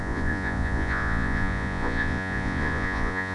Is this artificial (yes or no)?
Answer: yes